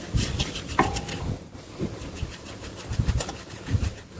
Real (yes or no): yes